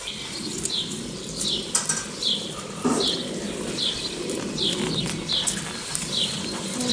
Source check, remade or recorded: recorded